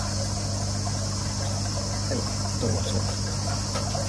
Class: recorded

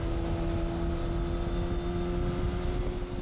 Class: recorded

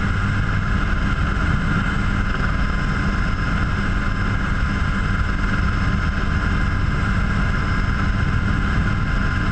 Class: recorded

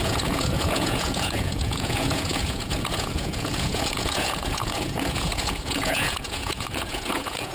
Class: remade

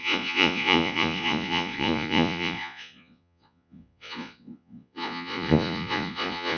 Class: remade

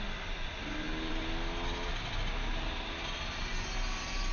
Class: recorded